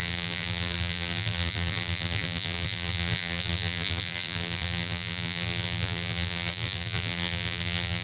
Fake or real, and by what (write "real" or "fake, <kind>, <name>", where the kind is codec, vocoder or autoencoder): fake, vocoder, BigVGAN v2